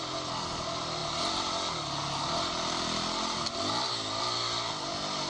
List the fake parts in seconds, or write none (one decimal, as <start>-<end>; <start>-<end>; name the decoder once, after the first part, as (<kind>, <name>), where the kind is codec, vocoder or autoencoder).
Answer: none